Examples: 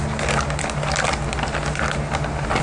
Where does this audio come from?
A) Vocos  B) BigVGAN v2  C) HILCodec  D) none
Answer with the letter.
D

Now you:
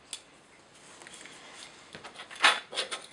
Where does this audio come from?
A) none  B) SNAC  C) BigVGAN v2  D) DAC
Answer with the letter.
A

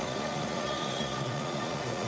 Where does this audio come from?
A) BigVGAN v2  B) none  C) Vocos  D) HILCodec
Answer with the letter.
C